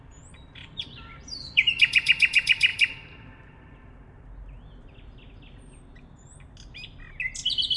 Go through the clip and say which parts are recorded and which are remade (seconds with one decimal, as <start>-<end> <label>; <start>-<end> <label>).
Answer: 0.0-2.7 remade; 2.7-7.8 recorded